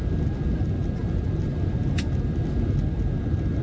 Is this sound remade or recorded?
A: recorded